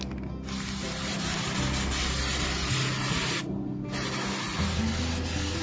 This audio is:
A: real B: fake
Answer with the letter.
A